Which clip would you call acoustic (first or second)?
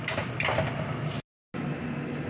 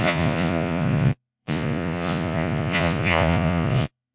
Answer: first